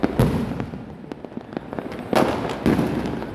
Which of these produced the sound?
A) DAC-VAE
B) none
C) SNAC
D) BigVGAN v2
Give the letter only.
B